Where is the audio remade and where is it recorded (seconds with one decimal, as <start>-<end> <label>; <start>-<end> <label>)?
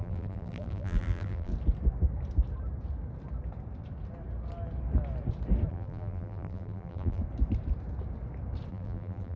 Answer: 0.0-1.5 remade; 1.5-5.7 recorded; 5.7-7.2 remade; 7.2-8.7 recorded; 8.7-9.4 remade